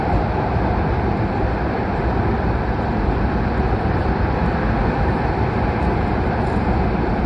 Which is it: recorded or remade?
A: remade